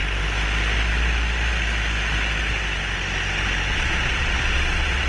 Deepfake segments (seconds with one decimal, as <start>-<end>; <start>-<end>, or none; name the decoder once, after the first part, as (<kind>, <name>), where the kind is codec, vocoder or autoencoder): 3.7-5.1 (vocoder, Vocos)

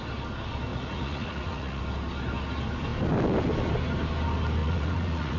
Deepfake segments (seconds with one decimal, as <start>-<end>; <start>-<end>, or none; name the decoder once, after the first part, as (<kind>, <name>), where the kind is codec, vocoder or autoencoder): 0.7-1.8 (vocoder, Vocos); 4.6-5.4

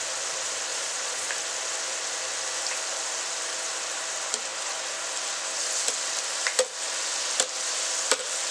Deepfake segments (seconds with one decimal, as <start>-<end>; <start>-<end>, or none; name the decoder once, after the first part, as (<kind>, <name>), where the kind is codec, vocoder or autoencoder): 0.7-1.3 (vocoder, Vocos)

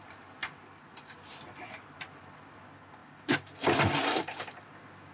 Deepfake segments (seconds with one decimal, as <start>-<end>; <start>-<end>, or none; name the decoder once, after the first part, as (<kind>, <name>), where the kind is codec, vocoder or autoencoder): none

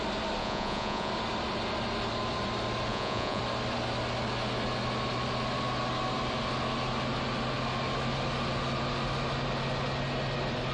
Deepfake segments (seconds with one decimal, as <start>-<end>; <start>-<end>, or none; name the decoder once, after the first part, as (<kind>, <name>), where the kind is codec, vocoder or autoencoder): 0.4-1.1 (vocoder, Vocos); 2.9-3.4

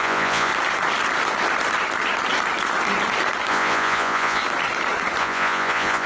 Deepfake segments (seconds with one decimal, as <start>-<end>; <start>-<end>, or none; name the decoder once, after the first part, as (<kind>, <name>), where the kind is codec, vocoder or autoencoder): 0.0-0.5 (vocoder, Vocos); 3.5-4.4; 5.2-6.1